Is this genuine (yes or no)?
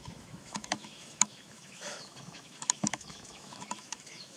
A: no